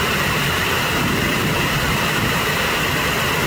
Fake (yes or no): yes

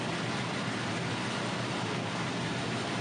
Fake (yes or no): no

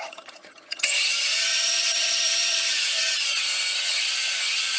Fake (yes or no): yes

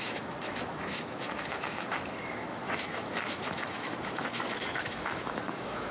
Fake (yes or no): yes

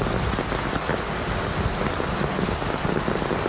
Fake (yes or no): no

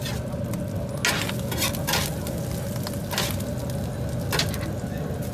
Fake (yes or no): no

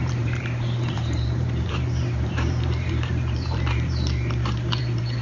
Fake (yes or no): yes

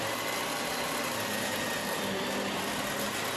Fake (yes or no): no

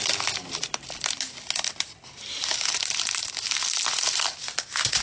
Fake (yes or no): no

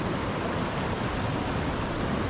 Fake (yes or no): no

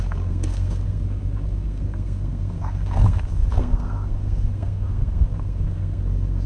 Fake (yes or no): yes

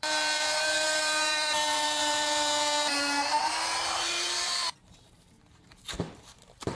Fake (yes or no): yes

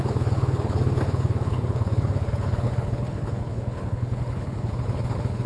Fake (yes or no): yes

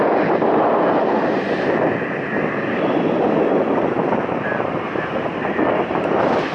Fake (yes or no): no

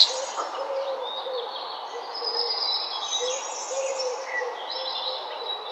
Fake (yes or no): no